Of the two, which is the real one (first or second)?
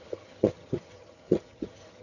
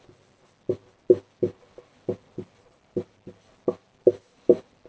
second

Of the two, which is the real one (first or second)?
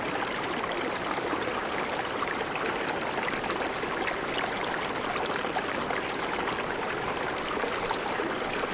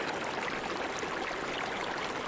first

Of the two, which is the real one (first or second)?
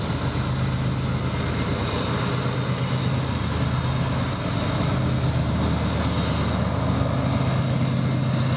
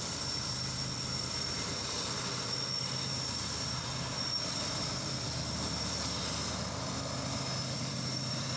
first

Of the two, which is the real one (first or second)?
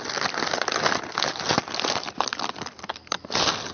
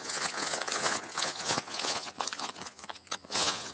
first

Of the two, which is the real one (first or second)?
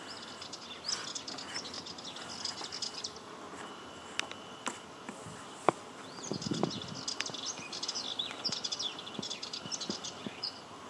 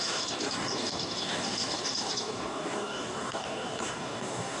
first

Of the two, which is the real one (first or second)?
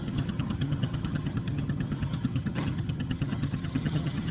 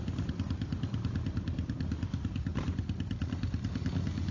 second